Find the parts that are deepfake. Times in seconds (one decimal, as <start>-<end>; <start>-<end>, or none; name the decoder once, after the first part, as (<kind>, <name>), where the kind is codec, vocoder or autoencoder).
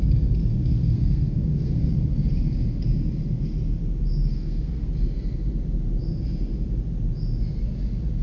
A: 0.5-1.9 (codec, SNAC); 4.3-4.9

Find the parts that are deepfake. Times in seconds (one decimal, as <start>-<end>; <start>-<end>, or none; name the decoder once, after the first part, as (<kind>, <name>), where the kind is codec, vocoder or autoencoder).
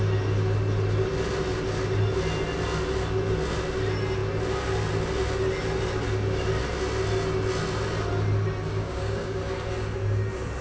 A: 8.8-9.4 (codec, DAC)